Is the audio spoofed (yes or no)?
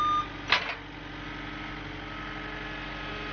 no